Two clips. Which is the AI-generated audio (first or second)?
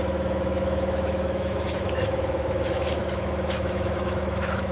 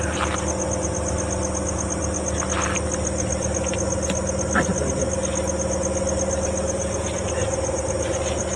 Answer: first